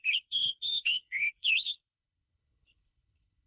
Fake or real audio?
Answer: fake